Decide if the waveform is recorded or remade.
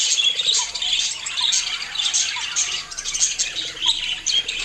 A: recorded